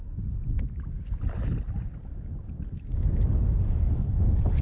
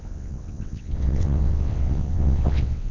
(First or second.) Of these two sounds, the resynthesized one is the second